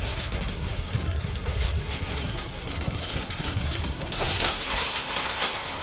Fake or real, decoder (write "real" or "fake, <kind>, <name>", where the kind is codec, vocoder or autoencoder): fake, codec, SNAC